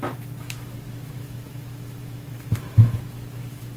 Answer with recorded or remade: remade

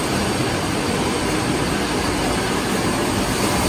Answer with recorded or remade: recorded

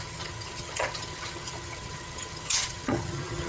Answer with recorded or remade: remade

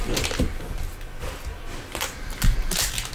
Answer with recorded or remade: recorded